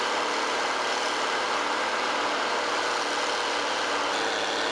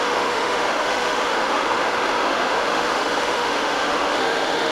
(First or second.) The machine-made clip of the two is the second